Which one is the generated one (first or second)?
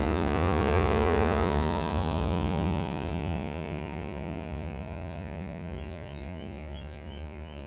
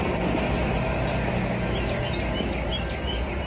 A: first